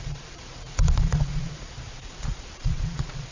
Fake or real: fake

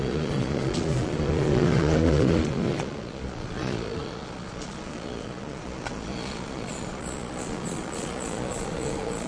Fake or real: fake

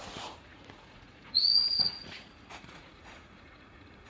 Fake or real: fake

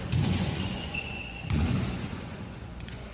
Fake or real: fake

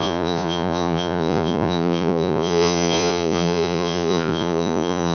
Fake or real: fake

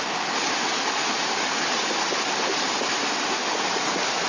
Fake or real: real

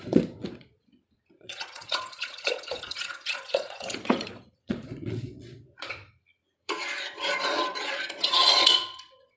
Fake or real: fake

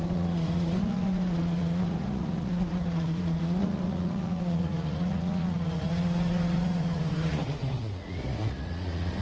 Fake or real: fake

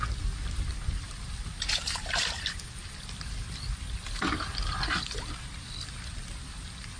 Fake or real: real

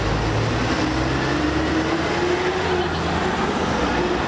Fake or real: real